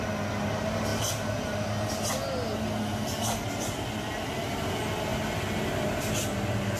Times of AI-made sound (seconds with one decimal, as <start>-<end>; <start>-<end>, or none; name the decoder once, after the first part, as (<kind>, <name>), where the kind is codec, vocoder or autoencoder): none